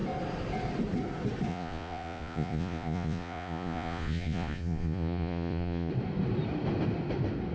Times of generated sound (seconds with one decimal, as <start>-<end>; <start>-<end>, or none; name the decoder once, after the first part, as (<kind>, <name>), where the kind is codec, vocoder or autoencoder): 1.5-5.9 (vocoder, Vocos)